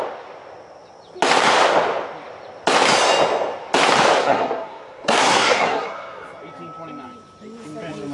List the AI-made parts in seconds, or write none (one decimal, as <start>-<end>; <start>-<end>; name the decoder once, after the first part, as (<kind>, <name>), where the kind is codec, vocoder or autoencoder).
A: 4.2-6.4 (codec, SNAC)